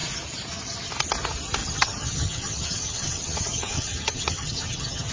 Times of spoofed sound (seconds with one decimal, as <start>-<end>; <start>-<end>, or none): 1.6-5.1